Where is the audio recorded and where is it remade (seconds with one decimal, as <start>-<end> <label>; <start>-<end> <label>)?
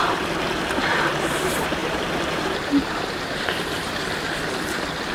0.0-1.8 recorded; 1.8-3.9 remade; 3.9-5.1 recorded